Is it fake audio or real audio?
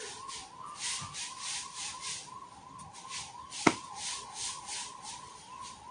fake